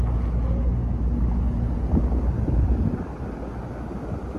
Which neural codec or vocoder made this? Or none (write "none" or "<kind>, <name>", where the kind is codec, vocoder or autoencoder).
none